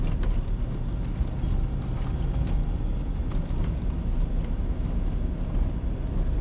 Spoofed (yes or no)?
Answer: no